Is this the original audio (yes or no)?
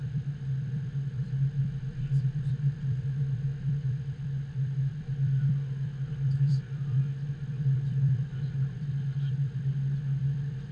no